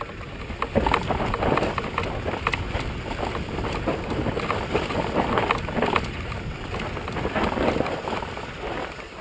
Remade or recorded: recorded